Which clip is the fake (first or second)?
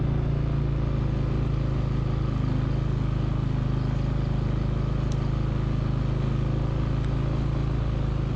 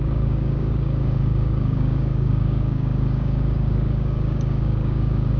second